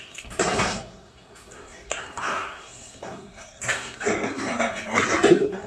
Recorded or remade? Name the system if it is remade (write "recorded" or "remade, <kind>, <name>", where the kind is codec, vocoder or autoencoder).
remade, codec, SNAC